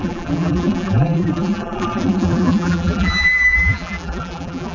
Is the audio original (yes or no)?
no